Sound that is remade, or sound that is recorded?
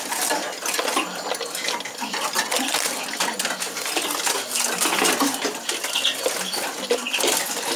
recorded